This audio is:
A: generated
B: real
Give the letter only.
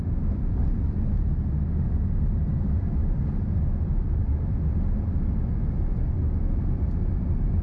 A